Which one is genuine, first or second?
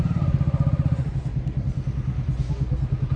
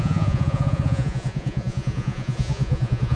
first